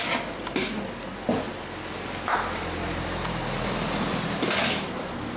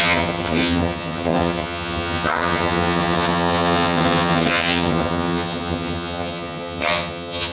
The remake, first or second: second